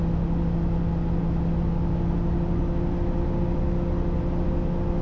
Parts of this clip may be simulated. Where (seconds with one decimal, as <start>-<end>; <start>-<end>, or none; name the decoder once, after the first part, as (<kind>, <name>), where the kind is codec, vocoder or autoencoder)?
none